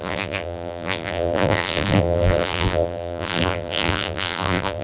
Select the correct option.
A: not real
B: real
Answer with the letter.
A